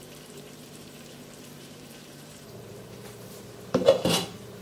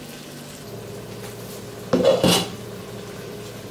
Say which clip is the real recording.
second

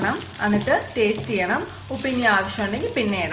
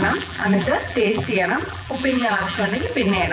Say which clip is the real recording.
first